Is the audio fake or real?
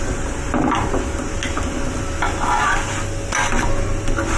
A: real